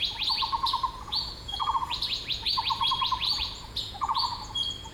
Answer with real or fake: fake